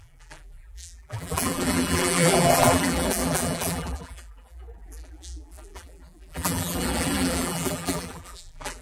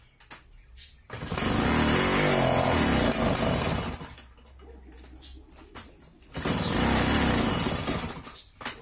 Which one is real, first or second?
second